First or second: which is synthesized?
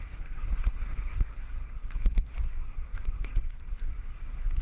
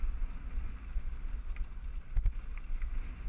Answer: first